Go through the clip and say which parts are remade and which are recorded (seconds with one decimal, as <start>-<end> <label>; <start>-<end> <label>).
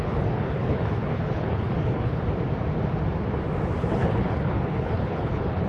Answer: 0.0-2.2 remade; 2.2-3.8 recorded; 3.8-5.7 remade